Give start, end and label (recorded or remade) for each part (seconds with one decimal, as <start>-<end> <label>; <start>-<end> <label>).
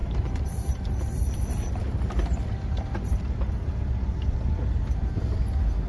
0.0-3.2 remade; 3.2-5.9 recorded